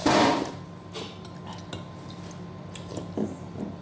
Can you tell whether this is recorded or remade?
recorded